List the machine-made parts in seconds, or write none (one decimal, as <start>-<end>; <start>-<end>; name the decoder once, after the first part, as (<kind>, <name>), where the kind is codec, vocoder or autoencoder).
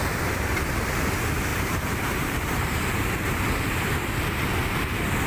0.0-1.0 (vocoder, BigVGAN v2); 1.5-3.5